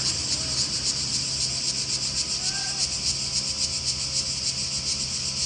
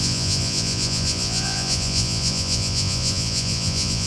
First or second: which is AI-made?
second